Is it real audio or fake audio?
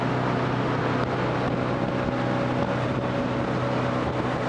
real